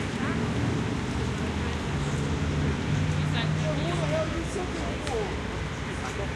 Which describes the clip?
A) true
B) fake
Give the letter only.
A